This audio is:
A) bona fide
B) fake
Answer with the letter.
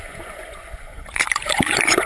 B